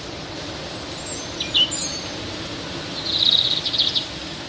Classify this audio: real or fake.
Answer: real